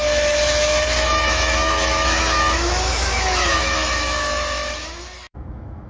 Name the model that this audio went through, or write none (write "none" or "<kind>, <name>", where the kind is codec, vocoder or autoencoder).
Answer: autoencoder, DAC-VAE